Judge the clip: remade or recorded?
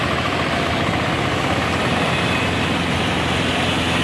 recorded